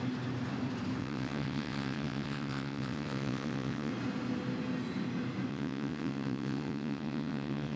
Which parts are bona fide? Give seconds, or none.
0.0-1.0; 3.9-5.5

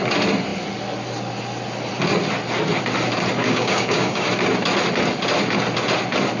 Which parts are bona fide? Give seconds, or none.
0.0-3.4; 4.3-6.4

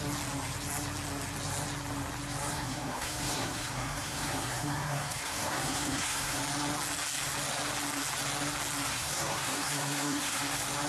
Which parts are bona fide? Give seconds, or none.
0.0-2.5; 6.4-8.9; 10.4-10.9